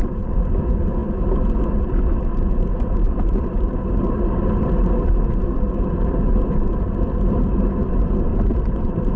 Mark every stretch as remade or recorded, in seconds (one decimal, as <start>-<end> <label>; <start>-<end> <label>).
0.0-2.3 recorded; 2.3-5.1 remade; 5.1-8.3 recorded; 8.3-9.2 remade